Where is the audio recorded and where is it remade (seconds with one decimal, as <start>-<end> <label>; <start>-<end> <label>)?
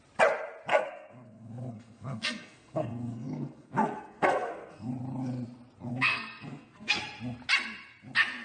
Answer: 0.0-0.7 recorded; 0.7-4.9 remade; 4.9-5.9 recorded; 5.9-7.0 remade; 7.0-8.4 recorded